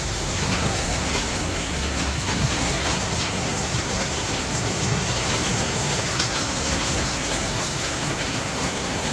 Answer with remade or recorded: remade